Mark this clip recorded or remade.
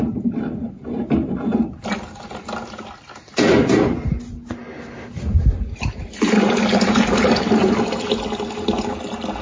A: recorded